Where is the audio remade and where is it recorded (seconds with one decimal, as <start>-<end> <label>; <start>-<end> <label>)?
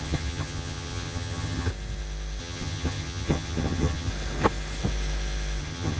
0.0-1.7 remade; 1.7-2.4 recorded; 2.4-4.1 remade; 4.1-5.6 recorded; 5.6-6.0 remade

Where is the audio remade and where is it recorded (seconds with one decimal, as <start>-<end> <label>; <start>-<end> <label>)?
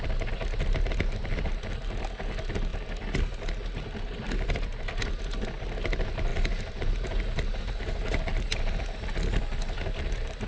0.0-6.3 recorded; 6.3-8.0 remade; 8.0-10.5 recorded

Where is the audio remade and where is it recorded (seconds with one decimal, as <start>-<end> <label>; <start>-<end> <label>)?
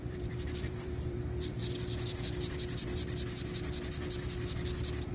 0.0-1.6 remade; 1.6-5.1 recorded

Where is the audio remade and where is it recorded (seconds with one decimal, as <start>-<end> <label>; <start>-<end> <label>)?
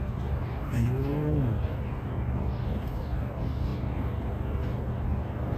0.0-5.6 remade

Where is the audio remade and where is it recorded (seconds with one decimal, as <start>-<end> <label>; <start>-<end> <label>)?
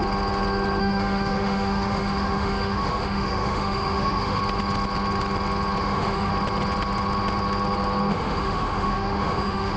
0.0-0.8 recorded; 0.8-4.4 remade; 4.4-5.8 recorded; 5.8-6.3 remade; 6.3-8.1 recorded; 8.1-9.8 remade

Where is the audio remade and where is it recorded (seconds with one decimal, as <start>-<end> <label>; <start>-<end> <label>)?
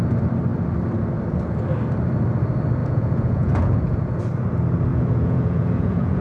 0.0-2.8 recorded; 2.8-4.2 remade; 4.2-4.9 recorded; 4.9-6.2 remade